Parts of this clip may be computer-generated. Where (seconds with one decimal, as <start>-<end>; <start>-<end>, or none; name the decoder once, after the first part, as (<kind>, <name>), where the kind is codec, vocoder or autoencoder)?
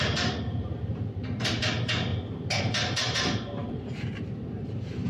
0.0-2.1 (vocoder, BigVGAN v2); 2.6-3.6; 4.5-5.1